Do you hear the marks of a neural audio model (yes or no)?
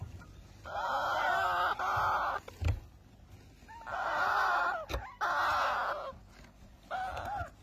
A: no